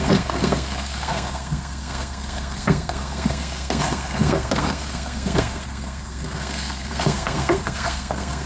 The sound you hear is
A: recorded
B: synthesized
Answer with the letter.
B